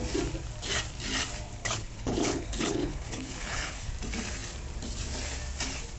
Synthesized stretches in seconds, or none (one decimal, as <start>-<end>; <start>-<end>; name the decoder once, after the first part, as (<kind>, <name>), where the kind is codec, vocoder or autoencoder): 1.6-3.9 (codec, HILCodec)